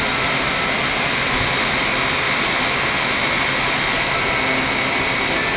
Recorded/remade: recorded